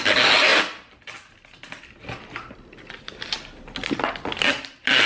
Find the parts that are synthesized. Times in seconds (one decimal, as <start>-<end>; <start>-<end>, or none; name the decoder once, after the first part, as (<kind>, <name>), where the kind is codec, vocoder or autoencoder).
none